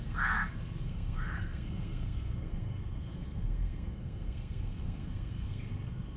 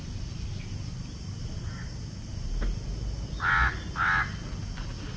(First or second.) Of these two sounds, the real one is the second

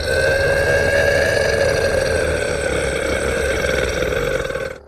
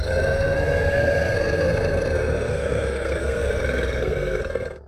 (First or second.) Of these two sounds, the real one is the first